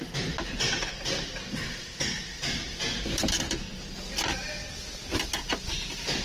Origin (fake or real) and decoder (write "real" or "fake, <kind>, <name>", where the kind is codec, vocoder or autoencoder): real